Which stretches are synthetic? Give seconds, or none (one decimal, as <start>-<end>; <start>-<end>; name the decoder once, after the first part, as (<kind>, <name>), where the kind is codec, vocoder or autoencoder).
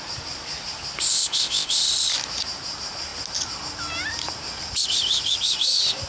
1.1-1.9 (codec, ZipCodec)